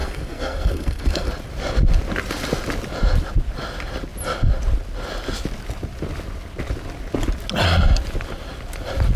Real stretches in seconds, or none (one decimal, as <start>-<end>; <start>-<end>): 1.3-9.2